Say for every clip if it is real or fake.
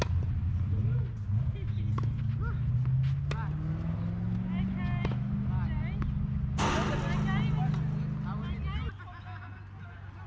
real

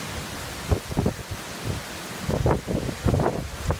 real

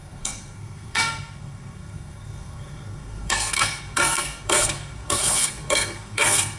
fake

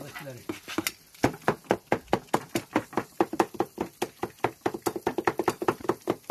real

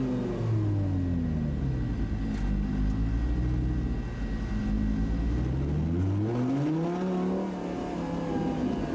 real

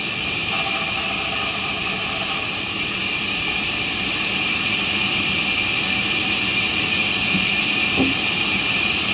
real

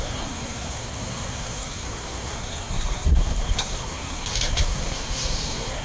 fake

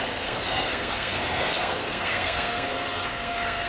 fake